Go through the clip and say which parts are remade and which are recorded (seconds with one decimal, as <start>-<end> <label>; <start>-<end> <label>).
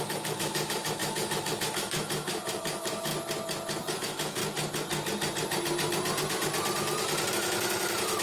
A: 0.0-3.1 remade; 3.1-4.0 recorded; 4.0-4.4 remade; 4.4-7.3 recorded; 7.3-8.2 remade